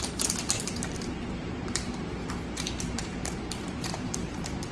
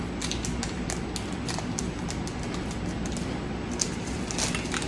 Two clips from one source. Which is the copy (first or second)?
first